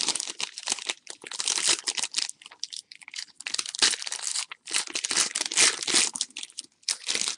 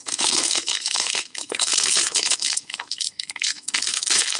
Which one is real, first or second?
first